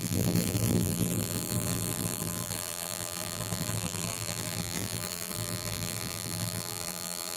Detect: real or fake fake